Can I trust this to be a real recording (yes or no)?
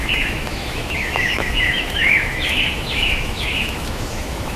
no